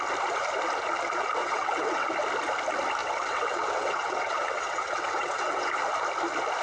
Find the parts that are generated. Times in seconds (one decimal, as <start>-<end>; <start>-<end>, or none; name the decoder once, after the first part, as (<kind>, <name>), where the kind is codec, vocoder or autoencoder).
1.4-2.1 (vocoder, WaveNeXt); 3.0-5.7